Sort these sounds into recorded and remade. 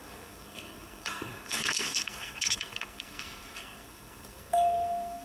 remade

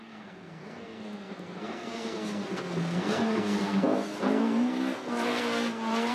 remade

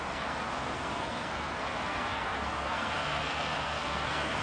remade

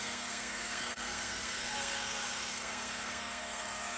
remade